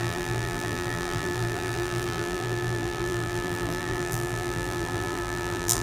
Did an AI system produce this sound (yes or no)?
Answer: yes